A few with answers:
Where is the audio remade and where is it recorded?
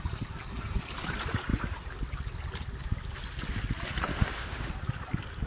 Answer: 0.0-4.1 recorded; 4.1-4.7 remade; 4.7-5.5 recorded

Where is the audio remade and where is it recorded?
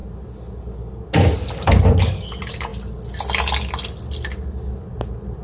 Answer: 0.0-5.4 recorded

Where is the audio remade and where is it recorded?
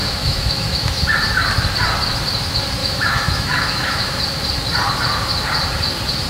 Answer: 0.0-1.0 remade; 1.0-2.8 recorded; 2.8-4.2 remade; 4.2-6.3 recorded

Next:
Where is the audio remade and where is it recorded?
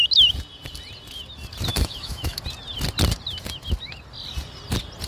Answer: 0.0-1.7 recorded; 1.7-2.4 remade; 2.4-5.1 recorded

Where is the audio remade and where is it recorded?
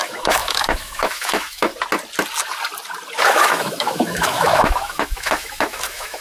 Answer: 0.0-1.7 remade; 1.7-3.3 recorded; 3.3-6.2 remade